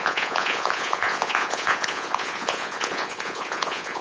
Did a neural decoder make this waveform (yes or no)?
yes